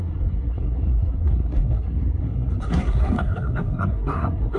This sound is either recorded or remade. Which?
remade